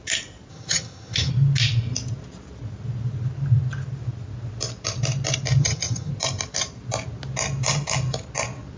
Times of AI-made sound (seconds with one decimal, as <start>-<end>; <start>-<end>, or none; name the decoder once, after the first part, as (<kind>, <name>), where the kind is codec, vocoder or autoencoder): 0.5-1.3 (vocoder, HiFi-GAN); 5.6-6.1